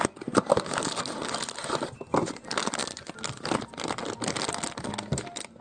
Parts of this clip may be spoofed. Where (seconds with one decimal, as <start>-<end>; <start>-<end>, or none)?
none